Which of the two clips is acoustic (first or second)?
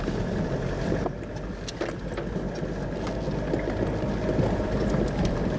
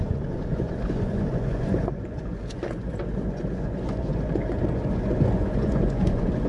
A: first